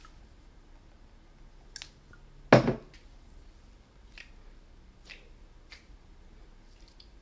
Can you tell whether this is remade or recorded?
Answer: recorded